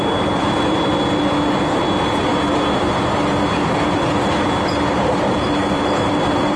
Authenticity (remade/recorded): recorded